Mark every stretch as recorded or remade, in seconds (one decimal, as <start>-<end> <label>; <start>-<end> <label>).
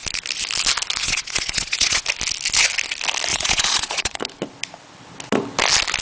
0.0-1.0 recorded; 1.0-2.0 remade; 2.0-3.3 recorded; 3.3-4.2 remade; 4.2-6.0 recorded